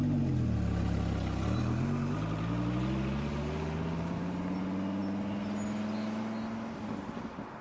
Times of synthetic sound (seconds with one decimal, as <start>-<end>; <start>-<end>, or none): none